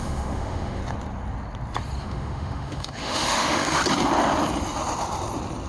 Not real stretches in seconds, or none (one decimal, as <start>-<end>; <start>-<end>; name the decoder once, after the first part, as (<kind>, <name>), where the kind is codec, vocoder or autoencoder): 0.0-0.8 (autoencoder, DAC-VAE); 2.0-3.8